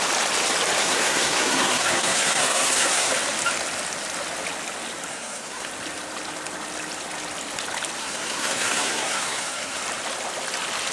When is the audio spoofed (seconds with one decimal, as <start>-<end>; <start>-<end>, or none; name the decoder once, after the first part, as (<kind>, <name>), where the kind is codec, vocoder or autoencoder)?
0.8-3.1 (codec, SNAC); 5.1-5.7; 8.0-9.8